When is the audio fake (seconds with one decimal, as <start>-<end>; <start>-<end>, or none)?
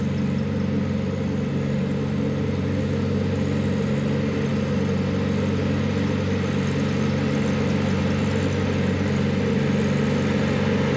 none